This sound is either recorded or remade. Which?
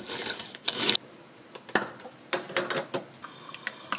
recorded